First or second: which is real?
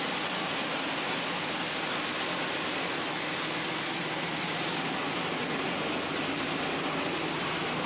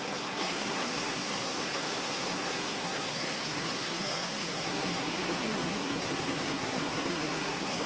first